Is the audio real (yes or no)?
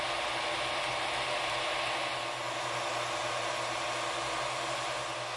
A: yes